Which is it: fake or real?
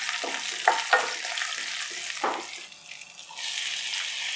real